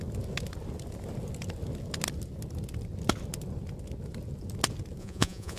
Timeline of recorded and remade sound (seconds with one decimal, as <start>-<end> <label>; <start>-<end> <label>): 0.0-5.0 recorded; 5.0-5.6 remade